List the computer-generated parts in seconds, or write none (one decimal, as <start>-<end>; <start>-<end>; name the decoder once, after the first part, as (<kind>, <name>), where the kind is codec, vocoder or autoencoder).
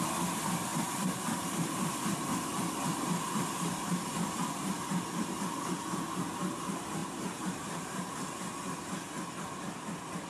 0.7-2.0 (vocoder, BigVGAN v2); 3.7-4.7; 7.0-8.1